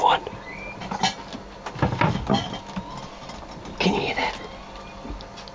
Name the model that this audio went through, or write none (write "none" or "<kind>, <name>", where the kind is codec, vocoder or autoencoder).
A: none